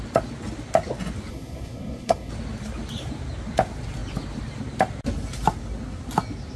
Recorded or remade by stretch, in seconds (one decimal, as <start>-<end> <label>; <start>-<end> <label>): 0.0-1.3 recorded; 1.3-2.3 remade; 2.3-6.6 recorded